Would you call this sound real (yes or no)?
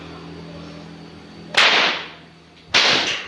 yes